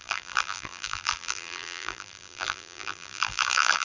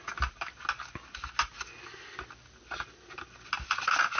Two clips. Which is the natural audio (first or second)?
second